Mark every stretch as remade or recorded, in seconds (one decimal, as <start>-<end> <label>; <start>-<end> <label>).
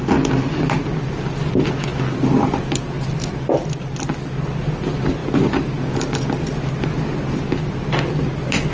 0.0-8.7 recorded